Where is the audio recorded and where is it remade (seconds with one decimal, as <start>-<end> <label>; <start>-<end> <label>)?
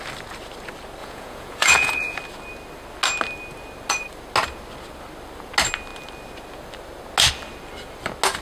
0.0-1.0 recorded; 1.0-2.2 remade; 2.2-8.4 recorded